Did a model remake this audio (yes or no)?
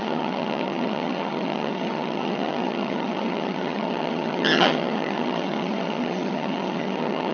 yes